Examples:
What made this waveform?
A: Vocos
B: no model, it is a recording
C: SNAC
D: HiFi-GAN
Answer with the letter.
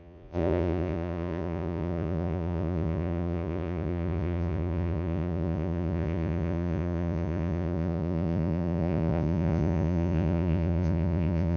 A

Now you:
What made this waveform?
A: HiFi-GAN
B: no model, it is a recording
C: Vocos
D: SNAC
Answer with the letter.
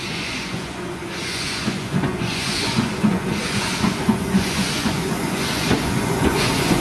C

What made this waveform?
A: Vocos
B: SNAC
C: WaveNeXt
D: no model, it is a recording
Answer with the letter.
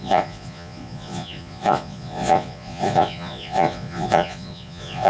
A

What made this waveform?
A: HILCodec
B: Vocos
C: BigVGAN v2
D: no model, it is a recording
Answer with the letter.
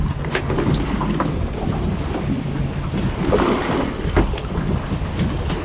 D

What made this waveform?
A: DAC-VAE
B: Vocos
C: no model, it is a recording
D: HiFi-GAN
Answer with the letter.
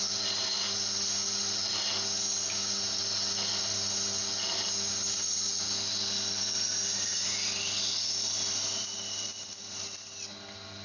C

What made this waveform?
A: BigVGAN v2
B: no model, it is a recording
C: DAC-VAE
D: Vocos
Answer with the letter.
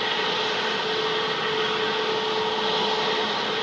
B